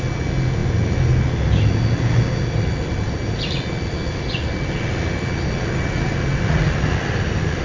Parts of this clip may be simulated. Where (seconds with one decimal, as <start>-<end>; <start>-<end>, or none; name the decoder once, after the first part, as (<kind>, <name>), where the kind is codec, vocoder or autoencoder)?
none